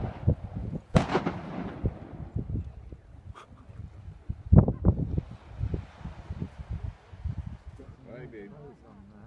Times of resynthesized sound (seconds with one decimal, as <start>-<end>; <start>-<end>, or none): 0.6-1.2